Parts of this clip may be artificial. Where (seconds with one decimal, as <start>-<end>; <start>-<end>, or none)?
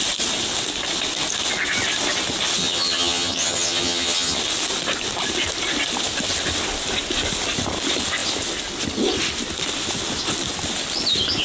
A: 2.6-4.4